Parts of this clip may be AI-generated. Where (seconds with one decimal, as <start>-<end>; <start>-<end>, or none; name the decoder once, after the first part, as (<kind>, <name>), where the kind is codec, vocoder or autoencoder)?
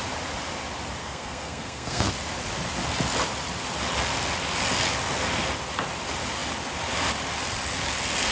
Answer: 1.0-2.1 (codec, SNAC)